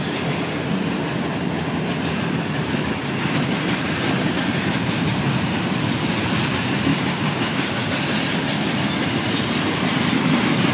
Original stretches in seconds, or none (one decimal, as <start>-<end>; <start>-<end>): 0.0-6.9; 7.9-10.7